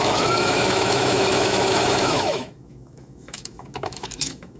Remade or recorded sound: remade